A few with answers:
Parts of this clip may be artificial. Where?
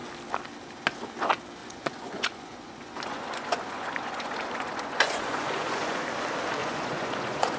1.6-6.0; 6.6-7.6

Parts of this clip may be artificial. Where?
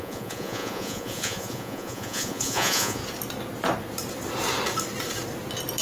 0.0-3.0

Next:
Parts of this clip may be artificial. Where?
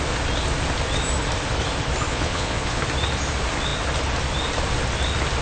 2.1-2.8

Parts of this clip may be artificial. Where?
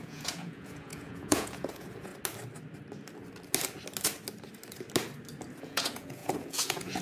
0.0-2.1; 5.6-7.0